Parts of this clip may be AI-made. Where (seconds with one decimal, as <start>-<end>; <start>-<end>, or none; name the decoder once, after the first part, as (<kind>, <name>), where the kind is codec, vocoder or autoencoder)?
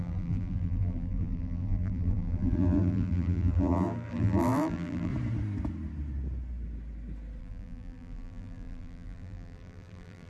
0.0-5.1 (vocoder, BigVGAN v2); 7.4-10.3